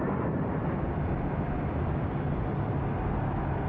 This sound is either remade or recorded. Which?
recorded